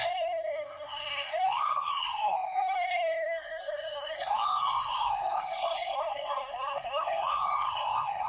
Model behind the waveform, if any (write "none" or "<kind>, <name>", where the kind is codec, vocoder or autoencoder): codec, SNAC